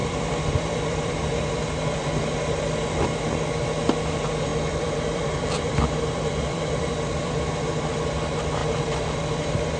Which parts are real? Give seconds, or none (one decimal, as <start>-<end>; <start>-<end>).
2.6-4.5; 7.6-8.6